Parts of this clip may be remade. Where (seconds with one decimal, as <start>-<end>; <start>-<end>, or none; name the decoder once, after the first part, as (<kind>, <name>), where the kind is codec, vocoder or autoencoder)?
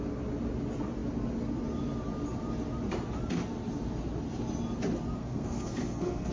5.2-6.3 (codec, SNAC)